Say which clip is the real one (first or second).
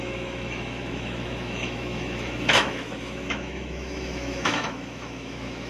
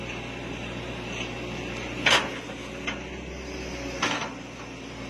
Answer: second